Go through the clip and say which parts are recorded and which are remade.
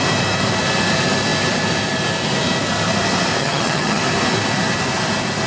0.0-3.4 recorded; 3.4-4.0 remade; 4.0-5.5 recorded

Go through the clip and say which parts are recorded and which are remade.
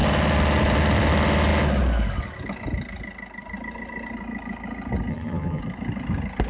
0.0-5.1 recorded; 5.1-5.6 remade; 5.6-6.5 recorded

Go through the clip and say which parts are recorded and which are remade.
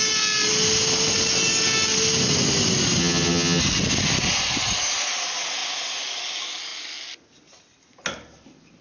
0.0-3.0 recorded; 3.0-3.6 remade; 3.6-8.8 recorded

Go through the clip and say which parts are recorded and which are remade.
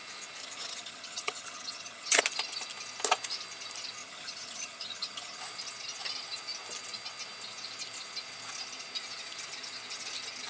0.0-0.4 recorded; 0.4-2.2 remade; 2.2-4.0 recorded; 4.0-5.4 remade; 5.4-10.5 recorded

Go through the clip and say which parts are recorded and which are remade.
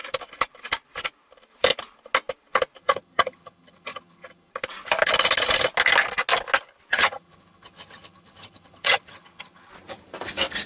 0.0-2.8 recorded; 2.8-4.5 remade; 4.5-6.9 recorded; 6.9-9.7 remade; 9.7-10.7 recorded